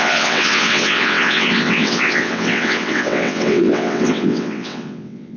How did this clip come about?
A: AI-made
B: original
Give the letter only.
A